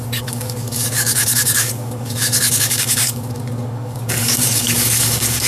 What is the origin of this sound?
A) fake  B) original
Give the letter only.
A